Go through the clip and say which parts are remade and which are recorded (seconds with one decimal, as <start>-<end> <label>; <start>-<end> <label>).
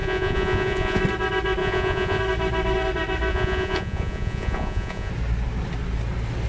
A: 0.0-1.0 remade; 1.0-1.6 recorded; 1.6-2.2 remade; 2.2-3.3 recorded; 3.3-5.1 remade; 5.1-6.5 recorded